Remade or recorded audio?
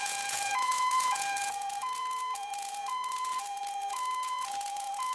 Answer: remade